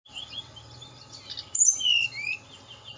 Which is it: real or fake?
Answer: real